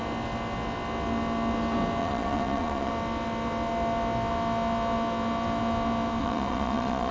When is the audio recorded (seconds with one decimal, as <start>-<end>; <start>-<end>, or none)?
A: 0.0-2.0; 2.9-6.2